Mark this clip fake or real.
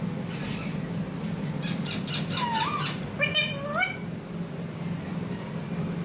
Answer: real